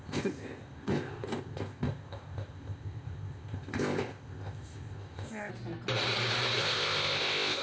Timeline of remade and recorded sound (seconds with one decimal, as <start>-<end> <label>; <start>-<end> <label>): 0.0-5.5 remade; 5.5-6.6 recorded; 6.6-7.6 remade